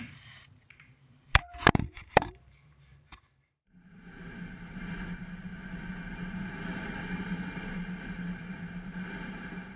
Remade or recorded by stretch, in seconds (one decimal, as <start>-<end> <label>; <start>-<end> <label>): 0.0-5.5 remade; 5.5-6.1 recorded; 6.1-9.8 remade

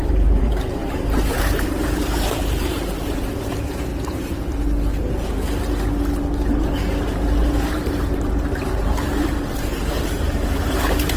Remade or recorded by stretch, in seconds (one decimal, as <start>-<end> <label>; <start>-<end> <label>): 0.0-3.9 remade; 3.9-7.0 recorded; 7.0-11.2 remade